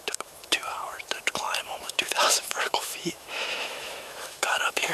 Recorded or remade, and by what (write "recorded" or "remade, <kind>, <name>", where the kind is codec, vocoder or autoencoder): remade, autoencoder, DAC-VAE